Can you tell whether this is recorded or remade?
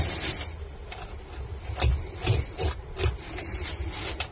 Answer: recorded